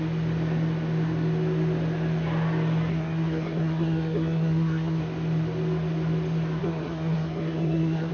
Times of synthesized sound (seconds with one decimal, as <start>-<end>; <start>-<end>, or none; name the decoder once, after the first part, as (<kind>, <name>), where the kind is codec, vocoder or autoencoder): 2.9-5.0 (codec, SNAC); 6.6-8.1